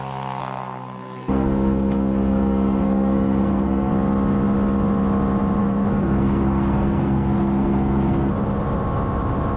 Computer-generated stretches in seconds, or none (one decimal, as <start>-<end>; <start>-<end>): 0.4-3.9; 5.6-8.3